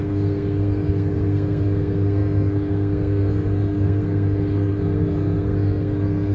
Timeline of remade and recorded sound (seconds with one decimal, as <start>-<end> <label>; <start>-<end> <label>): 0.0-6.3 remade